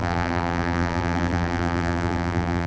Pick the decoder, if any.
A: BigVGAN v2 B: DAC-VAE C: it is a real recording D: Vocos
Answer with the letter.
A